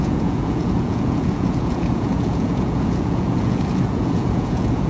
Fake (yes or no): yes